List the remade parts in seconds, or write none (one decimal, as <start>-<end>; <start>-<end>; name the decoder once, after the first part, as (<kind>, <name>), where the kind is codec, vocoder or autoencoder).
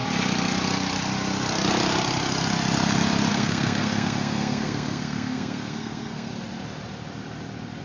3.3-6.3 (codec, SNAC)